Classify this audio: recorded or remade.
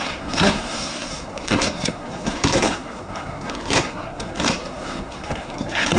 remade